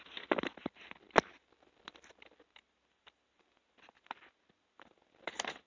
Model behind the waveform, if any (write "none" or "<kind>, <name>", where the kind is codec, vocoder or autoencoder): none